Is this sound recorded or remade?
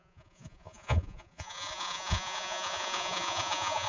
remade